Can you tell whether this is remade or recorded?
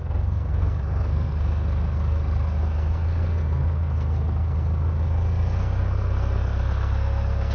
remade